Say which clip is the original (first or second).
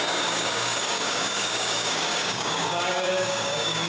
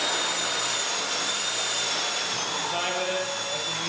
second